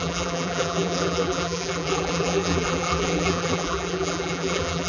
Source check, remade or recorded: remade